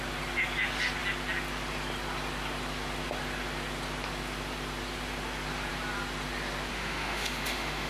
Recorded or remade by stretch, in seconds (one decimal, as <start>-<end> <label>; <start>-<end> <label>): 0.0-6.7 recorded; 6.7-7.9 remade

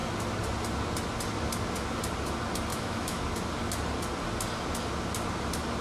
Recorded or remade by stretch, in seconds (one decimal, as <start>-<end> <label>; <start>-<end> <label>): 0.0-2.7 recorded; 2.7-3.2 remade; 3.2-5.8 recorded

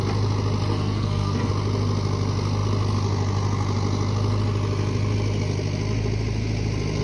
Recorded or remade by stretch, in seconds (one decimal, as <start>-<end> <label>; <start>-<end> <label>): 0.0-0.7 recorded; 0.7-1.5 remade; 1.5-7.0 recorded

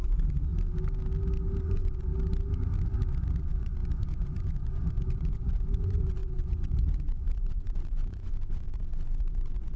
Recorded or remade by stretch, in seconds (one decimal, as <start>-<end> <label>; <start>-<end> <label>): 0.0-0.5 remade; 0.5-1.6 recorded; 1.6-2.1 remade; 2.1-3.4 recorded; 3.4-9.8 remade

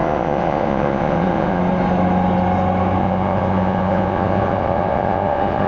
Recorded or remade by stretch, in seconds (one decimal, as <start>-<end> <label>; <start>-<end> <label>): 0.0-1.6 remade; 1.6-3.0 recorded; 3.0-5.7 remade

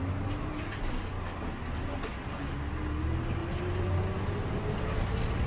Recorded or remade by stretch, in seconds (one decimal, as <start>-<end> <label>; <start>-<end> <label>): 0.0-3.4 recorded; 3.4-4.0 remade; 4.0-5.5 recorded